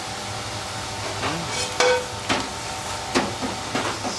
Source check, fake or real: real